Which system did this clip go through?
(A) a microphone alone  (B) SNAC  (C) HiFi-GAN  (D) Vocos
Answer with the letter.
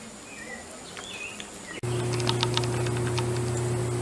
A